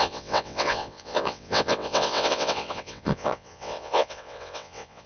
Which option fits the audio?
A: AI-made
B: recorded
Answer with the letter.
A